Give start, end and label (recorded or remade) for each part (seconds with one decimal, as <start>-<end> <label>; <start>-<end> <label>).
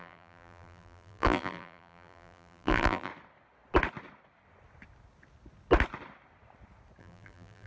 0.0-3.1 remade; 3.1-7.0 recorded; 7.0-7.7 remade